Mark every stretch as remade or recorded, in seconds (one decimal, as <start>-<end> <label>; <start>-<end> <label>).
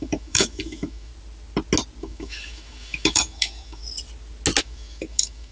0.0-1.1 remade; 1.1-2.0 recorded; 2.0-3.8 remade; 3.8-4.6 recorded; 4.6-5.5 remade